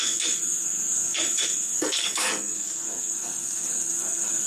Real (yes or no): no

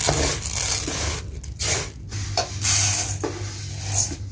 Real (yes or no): yes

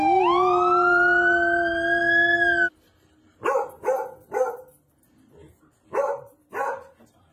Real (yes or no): yes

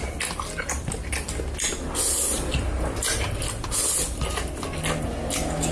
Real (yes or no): yes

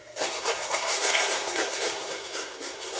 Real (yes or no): no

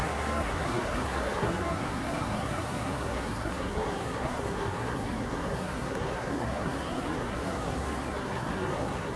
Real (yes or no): no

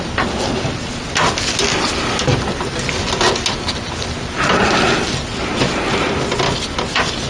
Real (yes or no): yes